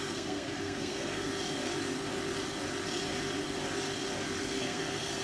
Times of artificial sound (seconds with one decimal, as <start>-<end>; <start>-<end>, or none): 0.0-1.3; 4.4-5.2

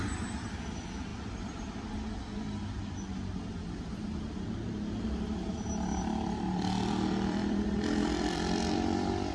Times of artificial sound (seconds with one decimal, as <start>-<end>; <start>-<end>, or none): 0.0-1.1; 6.0-9.3

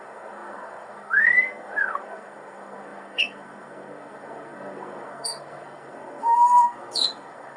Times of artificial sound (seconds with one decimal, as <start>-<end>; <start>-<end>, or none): 0.0-7.6

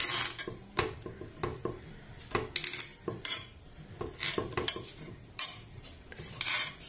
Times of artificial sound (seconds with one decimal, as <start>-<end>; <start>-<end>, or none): 1.5-2.0; 2.9-3.7; 4.4-6.9